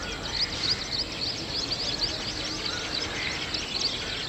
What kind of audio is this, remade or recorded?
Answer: recorded